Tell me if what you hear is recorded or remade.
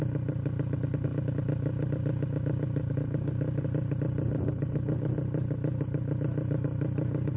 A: recorded